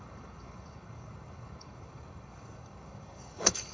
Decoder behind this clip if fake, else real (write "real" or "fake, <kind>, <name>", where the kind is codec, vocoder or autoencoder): fake, codec, DAC